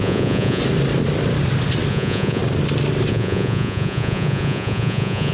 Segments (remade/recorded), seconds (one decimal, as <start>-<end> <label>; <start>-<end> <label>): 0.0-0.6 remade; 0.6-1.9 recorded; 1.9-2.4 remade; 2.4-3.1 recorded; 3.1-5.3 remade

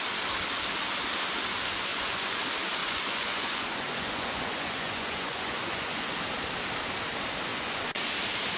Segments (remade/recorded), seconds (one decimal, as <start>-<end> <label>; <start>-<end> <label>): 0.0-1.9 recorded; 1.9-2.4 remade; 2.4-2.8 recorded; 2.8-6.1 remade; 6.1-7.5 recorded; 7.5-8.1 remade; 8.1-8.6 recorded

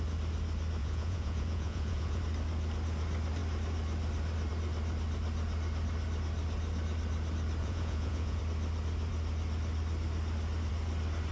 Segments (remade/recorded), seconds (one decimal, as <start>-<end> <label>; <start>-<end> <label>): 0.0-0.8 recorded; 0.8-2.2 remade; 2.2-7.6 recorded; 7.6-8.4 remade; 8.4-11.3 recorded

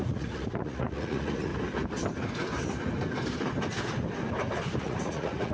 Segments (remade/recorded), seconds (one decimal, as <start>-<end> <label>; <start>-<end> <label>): 0.0-1.5 remade; 1.5-4.8 recorded; 4.8-5.5 remade

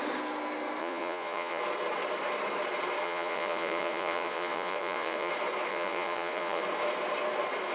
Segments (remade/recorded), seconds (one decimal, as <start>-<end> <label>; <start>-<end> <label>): 0.0-0.8 recorded; 0.8-1.6 remade; 1.6-3.0 recorded; 3.0-5.3 remade; 5.3-5.7 recorded; 5.7-6.6 remade; 6.6-7.7 recorded

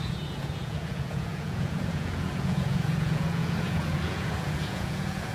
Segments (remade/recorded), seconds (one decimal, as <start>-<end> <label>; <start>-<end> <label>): 0.0-5.3 remade

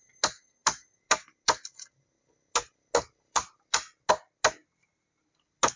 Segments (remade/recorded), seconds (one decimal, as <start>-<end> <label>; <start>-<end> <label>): 0.0-5.8 recorded

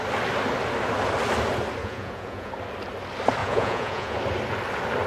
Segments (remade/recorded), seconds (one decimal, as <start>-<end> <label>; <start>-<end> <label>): 0.0-1.8 recorded; 1.8-2.5 remade; 2.5-3.4 recorded; 3.4-4.2 remade; 4.2-5.1 recorded